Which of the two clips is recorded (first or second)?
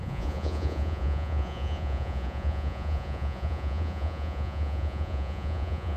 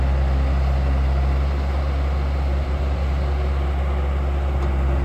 second